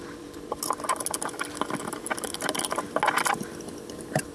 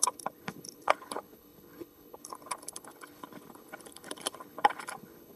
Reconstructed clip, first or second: second